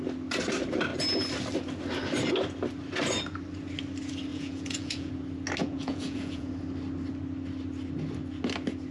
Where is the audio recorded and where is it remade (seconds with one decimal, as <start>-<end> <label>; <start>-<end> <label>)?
0.0-4.3 recorded; 4.3-5.1 remade; 5.1-5.6 recorded; 5.6-6.5 remade; 6.5-8.9 recorded